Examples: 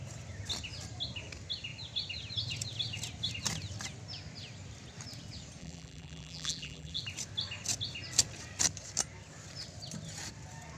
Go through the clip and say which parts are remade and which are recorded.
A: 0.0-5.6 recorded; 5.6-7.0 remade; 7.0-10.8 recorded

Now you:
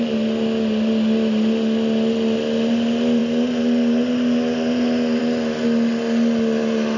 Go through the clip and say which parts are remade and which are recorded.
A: 0.0-7.0 recorded

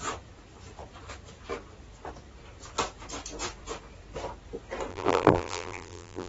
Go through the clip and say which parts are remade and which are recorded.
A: 0.0-4.9 recorded; 4.9-6.3 remade

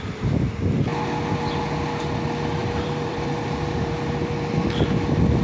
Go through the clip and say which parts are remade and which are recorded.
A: 0.0-2.6 recorded; 2.6-4.3 remade; 4.3-5.4 recorded

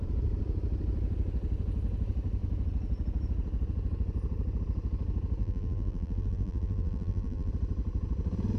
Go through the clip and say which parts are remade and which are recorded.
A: 0.0-5.4 recorded; 5.4-7.5 remade; 7.5-8.6 recorded

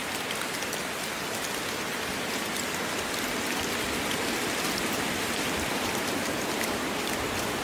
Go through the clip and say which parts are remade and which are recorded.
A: 0.0-4.6 recorded; 4.6-7.6 remade